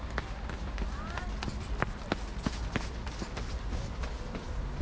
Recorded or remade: recorded